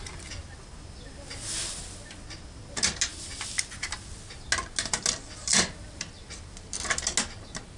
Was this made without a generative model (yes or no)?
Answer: yes